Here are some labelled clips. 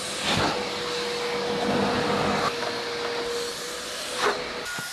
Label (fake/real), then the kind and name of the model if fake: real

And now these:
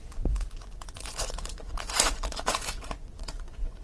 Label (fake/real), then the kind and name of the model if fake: fake, vocoder, Vocos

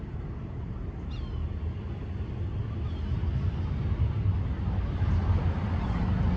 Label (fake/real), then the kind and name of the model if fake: real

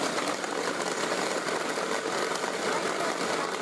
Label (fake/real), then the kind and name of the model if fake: real